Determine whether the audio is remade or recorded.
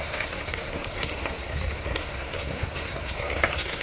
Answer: remade